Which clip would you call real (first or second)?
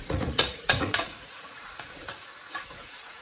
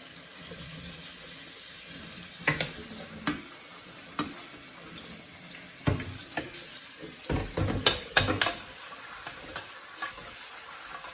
second